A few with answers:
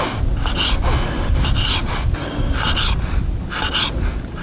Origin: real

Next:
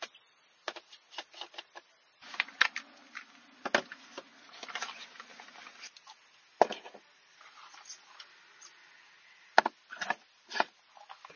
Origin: real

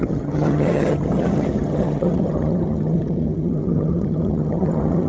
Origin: fake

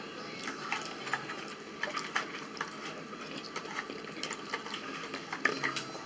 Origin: real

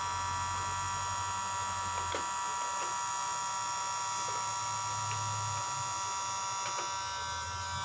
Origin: real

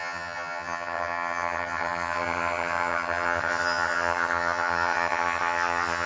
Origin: fake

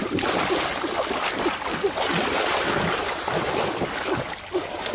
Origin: real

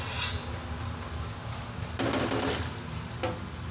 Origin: real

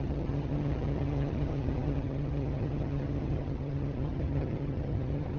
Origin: fake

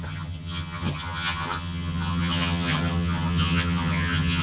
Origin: fake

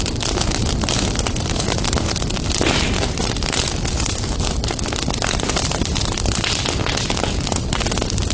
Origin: real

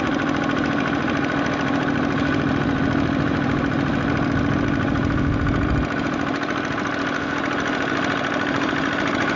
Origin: real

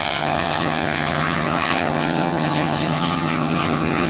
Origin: fake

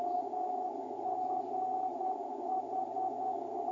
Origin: real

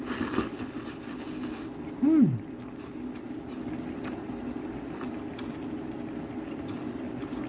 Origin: real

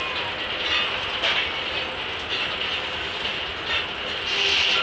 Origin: real